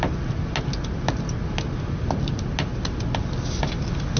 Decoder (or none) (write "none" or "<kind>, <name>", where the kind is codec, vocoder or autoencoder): none